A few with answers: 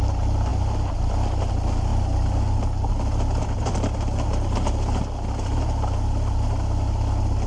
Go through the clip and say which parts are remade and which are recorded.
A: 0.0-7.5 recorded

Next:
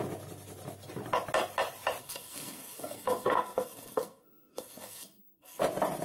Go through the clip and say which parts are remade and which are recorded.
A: 0.0-2.0 recorded; 2.0-5.6 remade; 5.6-6.0 recorded

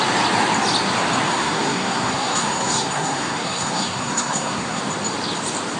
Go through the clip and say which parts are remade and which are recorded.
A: 0.0-1.3 recorded; 1.3-4.8 remade; 4.8-5.8 recorded